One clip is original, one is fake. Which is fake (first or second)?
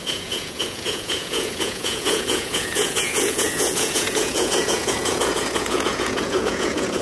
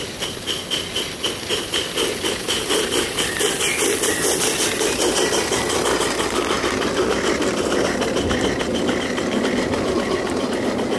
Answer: first